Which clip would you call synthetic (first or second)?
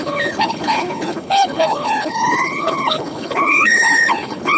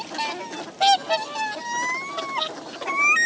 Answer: first